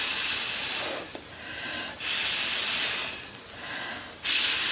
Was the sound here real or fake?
real